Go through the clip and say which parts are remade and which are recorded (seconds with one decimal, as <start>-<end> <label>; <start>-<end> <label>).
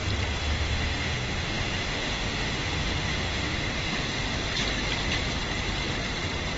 0.0-0.4 recorded; 0.4-4.4 remade; 4.4-6.6 recorded